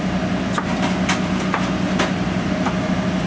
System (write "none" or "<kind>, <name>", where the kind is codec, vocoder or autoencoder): none